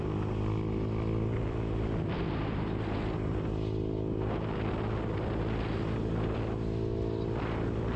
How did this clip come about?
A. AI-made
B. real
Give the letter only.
B